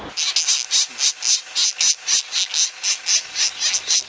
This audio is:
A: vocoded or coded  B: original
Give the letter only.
B